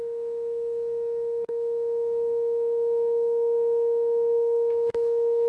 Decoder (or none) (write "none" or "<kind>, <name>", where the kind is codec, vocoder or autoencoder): codec, SNAC